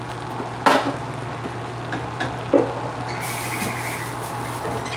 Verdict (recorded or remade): recorded